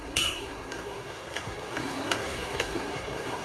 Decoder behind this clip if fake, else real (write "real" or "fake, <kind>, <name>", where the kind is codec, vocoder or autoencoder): fake, codec, SNAC